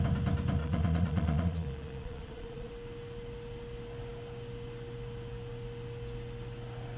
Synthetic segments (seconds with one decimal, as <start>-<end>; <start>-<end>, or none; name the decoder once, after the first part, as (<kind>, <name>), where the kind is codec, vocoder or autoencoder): 0.6-2.7 (vocoder, Vocos)